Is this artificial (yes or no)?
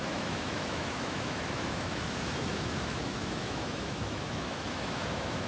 yes